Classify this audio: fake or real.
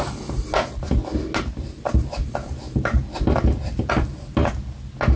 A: real